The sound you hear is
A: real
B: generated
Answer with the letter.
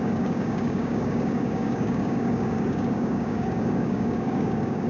B